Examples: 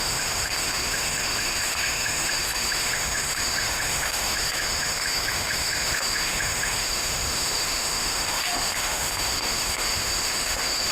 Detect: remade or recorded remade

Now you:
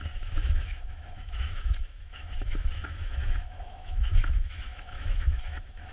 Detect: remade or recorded remade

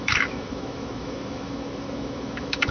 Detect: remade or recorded remade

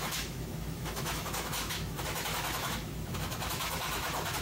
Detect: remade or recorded remade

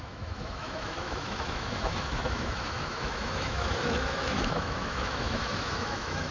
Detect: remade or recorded remade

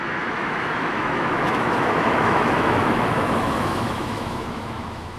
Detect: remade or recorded remade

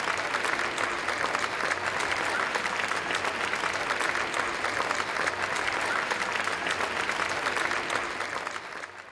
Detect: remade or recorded recorded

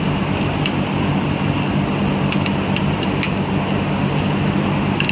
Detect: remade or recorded recorded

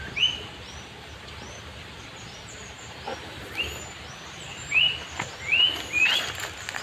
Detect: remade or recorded recorded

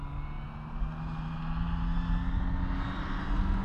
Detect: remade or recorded recorded